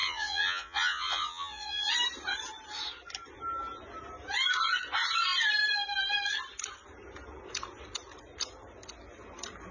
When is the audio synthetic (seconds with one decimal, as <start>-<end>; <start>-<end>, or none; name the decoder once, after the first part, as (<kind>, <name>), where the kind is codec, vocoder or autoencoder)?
0.0-1.9 (vocoder, Vocos)